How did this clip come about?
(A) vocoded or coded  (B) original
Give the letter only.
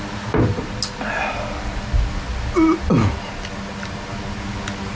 B